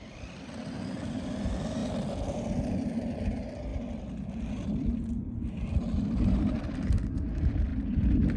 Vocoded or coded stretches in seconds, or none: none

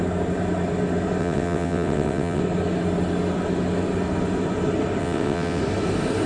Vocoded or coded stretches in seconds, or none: 1.2-2.4; 5.0-5.6

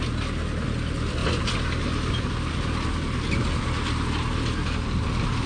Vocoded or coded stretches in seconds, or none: none

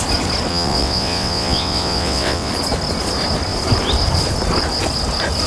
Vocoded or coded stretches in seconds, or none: 0.5-2.5

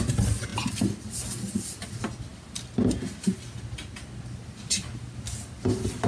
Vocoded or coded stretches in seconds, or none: none